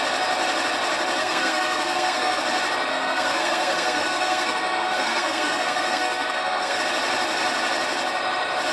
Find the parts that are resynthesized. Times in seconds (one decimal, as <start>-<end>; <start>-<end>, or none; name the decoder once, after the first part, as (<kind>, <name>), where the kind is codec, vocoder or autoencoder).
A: 1.2-2.4 (codec, SNAC); 2.9-6.8